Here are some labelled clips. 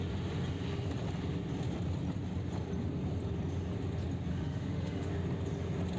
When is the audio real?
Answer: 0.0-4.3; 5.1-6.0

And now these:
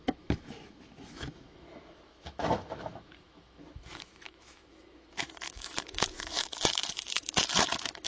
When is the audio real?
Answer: none

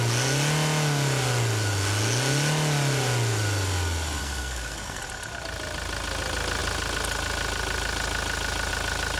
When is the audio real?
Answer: 0.0-4.2; 5.0-9.2

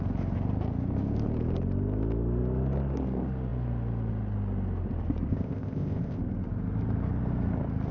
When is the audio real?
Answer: 0.0-5.3; 6.2-7.9

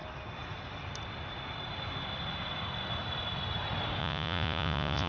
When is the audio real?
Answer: 0.0-4.0

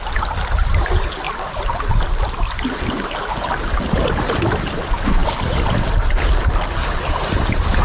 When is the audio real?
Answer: 0.0-7.8

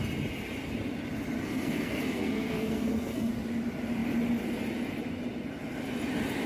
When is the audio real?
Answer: 0.0-1.4; 3.3-6.5